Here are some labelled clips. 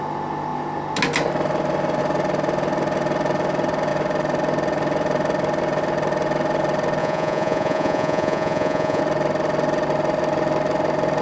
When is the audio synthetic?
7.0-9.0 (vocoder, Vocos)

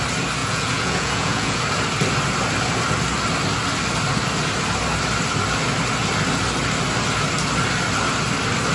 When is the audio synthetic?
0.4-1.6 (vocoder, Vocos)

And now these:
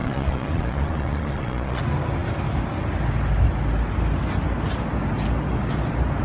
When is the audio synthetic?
0.0-1.8 (vocoder, Vocos)